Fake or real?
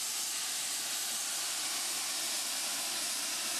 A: real